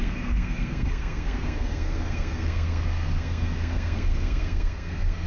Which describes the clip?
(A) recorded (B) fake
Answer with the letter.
B